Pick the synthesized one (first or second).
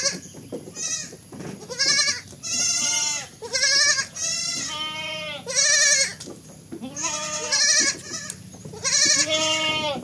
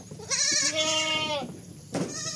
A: second